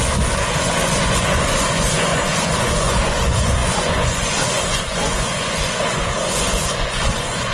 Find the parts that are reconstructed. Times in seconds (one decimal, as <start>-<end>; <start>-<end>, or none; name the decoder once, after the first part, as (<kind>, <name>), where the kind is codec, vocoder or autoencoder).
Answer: 0.0-7.5 (vocoder, Vocos)